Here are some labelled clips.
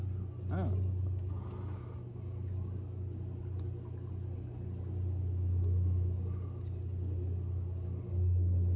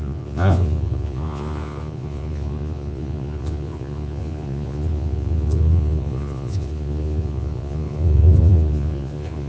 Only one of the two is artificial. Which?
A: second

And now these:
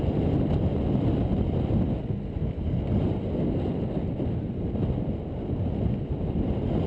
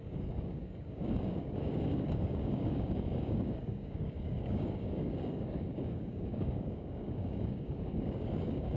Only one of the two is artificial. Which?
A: second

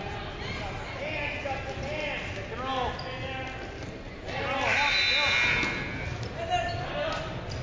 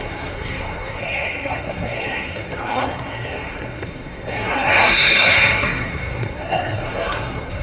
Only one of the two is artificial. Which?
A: second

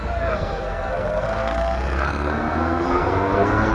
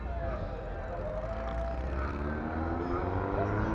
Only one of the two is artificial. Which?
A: first